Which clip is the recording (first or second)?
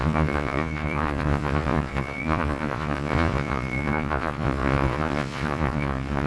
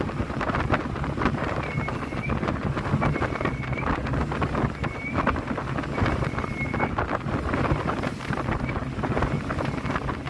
second